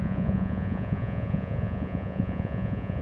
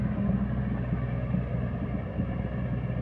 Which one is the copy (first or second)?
first